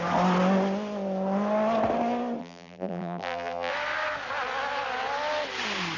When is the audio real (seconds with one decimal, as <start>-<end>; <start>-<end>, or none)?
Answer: 0.0-2.4; 3.7-6.0